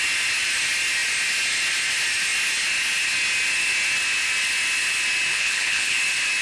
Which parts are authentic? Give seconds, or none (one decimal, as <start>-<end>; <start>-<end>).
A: 0.0-5.3; 6.0-6.4